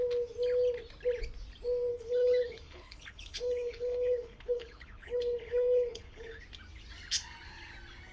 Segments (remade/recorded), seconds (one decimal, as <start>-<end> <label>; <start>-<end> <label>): 0.0-1.9 recorded; 1.9-6.4 remade; 6.4-8.1 recorded